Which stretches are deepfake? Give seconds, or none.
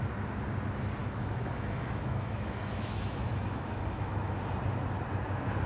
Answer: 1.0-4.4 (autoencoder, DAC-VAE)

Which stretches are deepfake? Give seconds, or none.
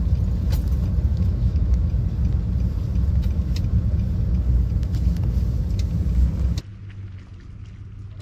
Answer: 1.1-1.9 (autoencoder, DAC-VAE)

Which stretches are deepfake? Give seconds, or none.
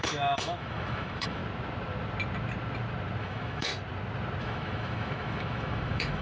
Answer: 0.0-1.4 (autoencoder, DAC-VAE); 3.2-3.7; 4.4-6.2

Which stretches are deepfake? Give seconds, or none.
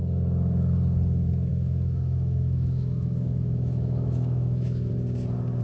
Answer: 1.5-4.9 (autoencoder, DAC-VAE)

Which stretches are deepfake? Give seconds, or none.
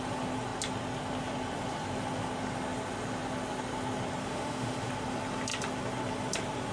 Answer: 4.2-4.9 (autoencoder, DAC-VAE)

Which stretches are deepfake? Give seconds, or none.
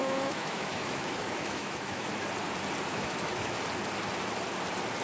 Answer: 0.0-2.1 (autoencoder, DAC-VAE); 2.9-3.6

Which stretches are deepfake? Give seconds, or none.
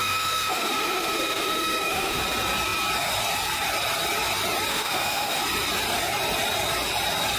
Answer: 0.0-2.2 (autoencoder, DAC-VAE); 4.7-5.4